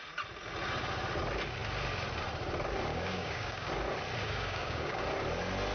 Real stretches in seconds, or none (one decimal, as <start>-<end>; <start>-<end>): 0.0-2.9; 3.7-4.2; 5.0-5.7